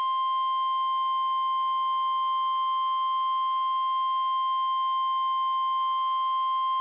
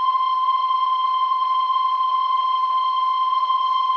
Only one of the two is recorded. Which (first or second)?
first